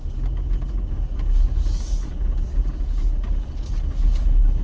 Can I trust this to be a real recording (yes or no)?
yes